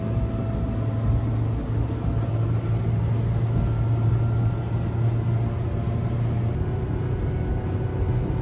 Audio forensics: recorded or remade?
recorded